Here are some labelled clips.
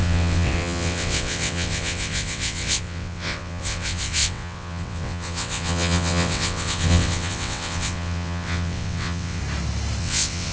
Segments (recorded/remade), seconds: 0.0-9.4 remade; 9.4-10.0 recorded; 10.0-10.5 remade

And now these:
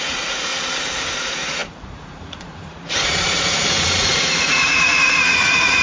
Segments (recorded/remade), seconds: 0.0-0.5 remade; 0.5-1.2 recorded; 1.2-5.8 remade

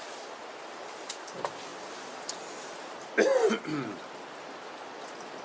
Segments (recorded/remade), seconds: 0.0-0.4 recorded; 0.4-1.1 remade; 1.1-5.4 recorded

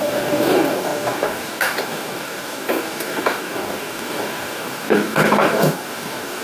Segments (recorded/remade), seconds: 0.0-6.4 remade

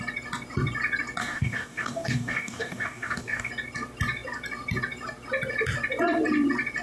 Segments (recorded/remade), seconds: 0.0-1.2 recorded; 1.2-3.5 remade; 3.5-6.8 recorded